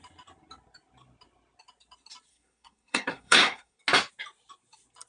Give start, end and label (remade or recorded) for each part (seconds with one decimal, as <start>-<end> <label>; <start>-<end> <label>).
0.0-2.3 recorded; 2.3-3.8 remade; 3.8-5.1 recorded